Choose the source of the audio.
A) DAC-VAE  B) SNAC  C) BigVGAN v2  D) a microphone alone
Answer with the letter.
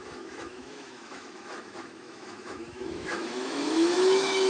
A